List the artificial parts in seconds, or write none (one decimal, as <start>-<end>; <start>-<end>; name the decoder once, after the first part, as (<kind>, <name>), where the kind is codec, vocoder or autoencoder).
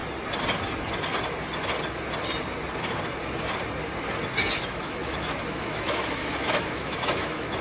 4.6-7.6 (autoencoder, DAC-VAE)